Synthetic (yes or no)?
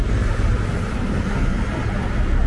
no